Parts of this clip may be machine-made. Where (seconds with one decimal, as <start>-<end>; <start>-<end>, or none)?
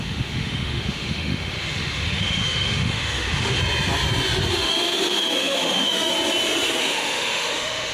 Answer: 0.0-3.6; 4.5-6.1; 6.8-7.9